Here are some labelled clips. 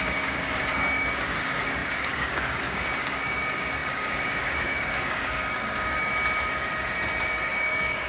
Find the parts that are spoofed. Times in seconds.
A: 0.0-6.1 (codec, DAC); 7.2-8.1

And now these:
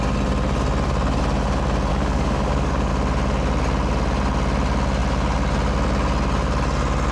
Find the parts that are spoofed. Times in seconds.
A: 1.9-2.9 (codec, DAC)

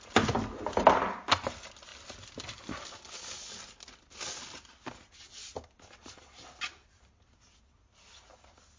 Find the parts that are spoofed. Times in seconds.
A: none

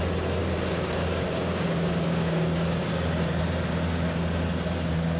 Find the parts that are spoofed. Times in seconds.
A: 0.4-3.4 (codec, DAC)